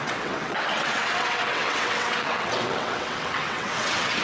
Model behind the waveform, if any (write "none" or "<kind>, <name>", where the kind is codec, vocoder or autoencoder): vocoder, WaveNeXt